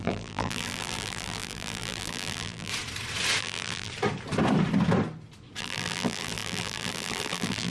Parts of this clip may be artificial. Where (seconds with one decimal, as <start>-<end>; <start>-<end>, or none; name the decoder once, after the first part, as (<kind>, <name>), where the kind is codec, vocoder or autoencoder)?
0.0-2.7 (vocoder, BigVGAN v2); 3.4-3.9; 5.6-7.7